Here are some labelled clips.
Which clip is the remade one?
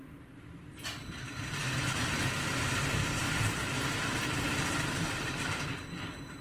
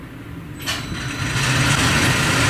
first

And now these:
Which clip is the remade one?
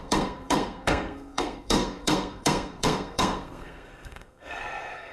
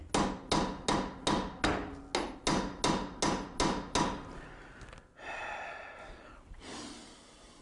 first